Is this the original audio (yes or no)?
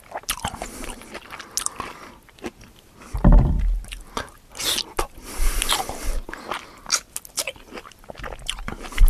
yes